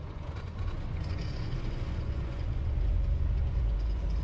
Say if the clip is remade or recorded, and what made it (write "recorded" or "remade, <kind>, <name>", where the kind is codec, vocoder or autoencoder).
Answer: remade, vocoder, Vocos